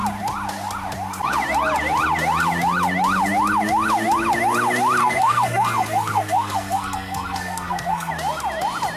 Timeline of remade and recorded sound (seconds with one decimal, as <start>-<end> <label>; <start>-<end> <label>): 0.0-5.0 recorded; 5.0-8.1 remade; 8.1-9.0 recorded